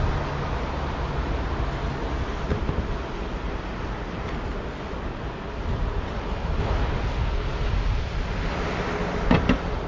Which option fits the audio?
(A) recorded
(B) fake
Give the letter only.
A